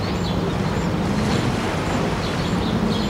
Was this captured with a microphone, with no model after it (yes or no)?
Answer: yes